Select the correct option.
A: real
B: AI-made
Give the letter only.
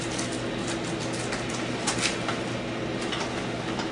A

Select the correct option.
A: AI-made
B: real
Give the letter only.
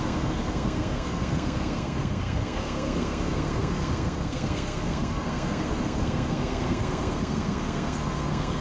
A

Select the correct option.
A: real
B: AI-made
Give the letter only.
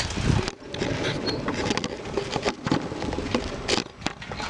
A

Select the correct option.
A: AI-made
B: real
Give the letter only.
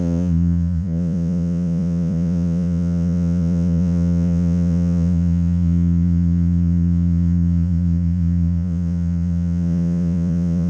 A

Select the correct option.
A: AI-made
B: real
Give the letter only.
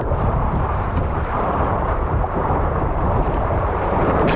A